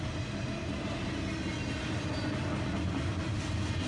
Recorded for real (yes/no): yes